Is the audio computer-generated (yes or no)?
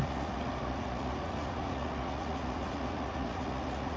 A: yes